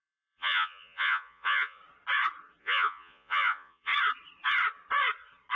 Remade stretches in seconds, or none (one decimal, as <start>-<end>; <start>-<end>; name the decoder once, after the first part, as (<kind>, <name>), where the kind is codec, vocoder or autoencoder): 0.0-1.8 (vocoder, Vocos); 2.6-3.9